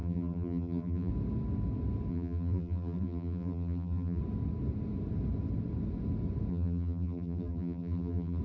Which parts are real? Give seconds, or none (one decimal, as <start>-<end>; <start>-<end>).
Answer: 1.1-2.1; 4.2-6.5